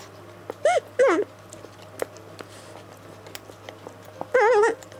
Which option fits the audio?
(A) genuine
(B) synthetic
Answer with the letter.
A